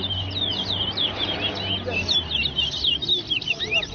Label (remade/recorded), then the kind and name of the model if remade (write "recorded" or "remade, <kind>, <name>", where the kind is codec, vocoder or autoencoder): recorded